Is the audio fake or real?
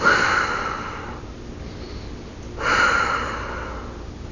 real